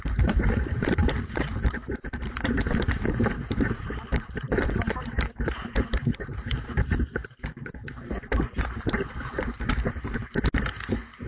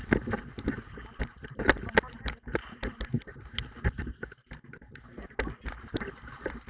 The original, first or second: second